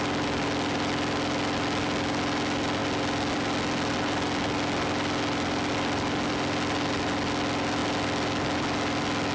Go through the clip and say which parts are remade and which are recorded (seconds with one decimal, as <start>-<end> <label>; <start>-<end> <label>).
0.0-9.3 recorded